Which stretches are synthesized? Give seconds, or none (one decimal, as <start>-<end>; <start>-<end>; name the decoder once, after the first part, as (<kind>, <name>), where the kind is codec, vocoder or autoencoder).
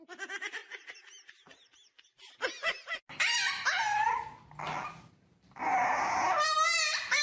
none